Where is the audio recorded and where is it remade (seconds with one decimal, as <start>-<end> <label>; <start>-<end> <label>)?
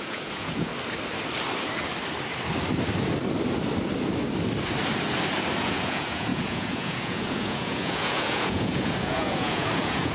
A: 0.0-0.7 remade; 0.7-5.6 recorded; 5.6-10.1 remade